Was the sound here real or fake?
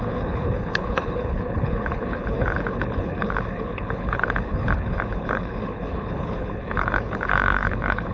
fake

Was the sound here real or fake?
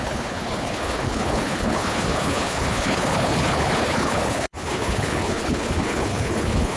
fake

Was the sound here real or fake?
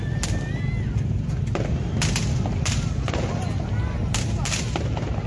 real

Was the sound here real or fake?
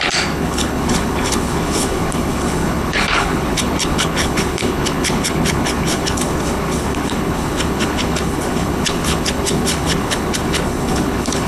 fake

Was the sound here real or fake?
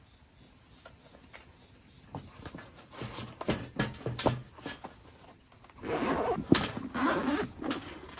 real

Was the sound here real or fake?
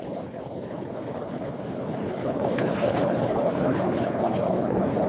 fake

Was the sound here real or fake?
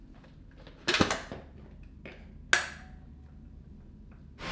real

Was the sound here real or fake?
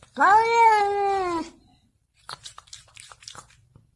real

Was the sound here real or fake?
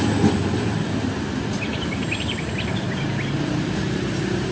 real